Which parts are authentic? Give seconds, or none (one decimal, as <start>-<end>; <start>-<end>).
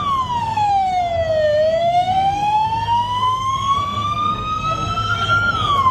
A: 0.0-0.4; 1.0-1.8; 5.3-5.9